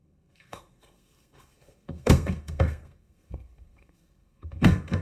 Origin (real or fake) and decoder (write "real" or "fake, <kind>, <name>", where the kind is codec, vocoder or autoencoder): fake, codec, SNAC